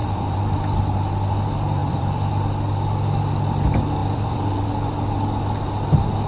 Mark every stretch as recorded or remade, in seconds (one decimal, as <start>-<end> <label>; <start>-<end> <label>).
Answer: 0.0-0.8 remade; 0.8-1.8 recorded; 1.8-2.3 remade; 2.3-4.0 recorded; 4.0-4.7 remade; 4.7-6.3 recorded